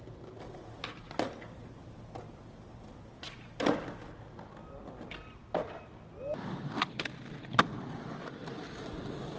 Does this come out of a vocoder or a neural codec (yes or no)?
no